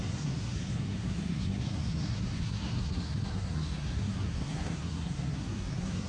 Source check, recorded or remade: remade